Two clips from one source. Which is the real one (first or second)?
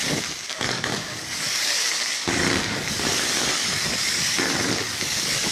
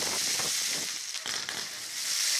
second